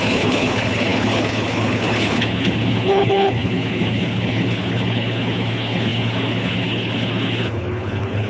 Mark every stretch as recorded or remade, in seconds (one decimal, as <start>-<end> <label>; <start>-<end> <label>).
0.0-8.3 remade